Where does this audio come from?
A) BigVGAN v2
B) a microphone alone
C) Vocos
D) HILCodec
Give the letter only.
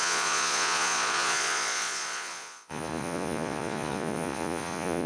C